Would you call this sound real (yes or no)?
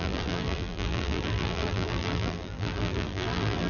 no